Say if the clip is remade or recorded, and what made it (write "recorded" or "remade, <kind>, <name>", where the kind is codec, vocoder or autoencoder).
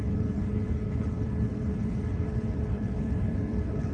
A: remade, codec, HILCodec